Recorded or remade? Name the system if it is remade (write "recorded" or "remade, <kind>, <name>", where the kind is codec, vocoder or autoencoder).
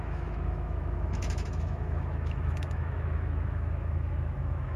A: remade, autoencoder, DAC-VAE